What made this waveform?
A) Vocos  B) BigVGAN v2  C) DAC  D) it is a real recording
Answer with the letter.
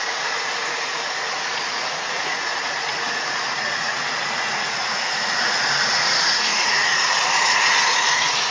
A